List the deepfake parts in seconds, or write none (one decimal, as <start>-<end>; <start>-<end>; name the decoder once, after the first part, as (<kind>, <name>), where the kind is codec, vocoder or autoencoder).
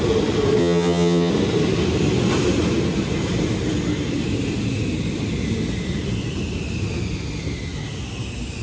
0.6-1.3 (vocoder, HiFi-GAN)